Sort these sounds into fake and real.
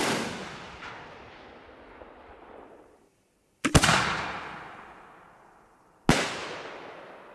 real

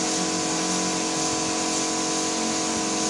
real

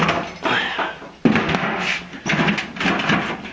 real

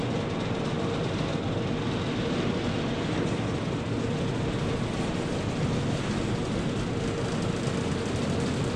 real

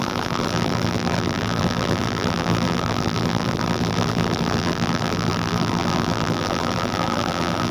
fake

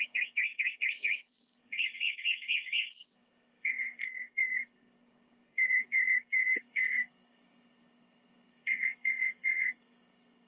fake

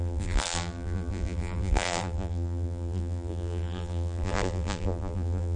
fake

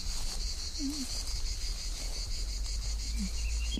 real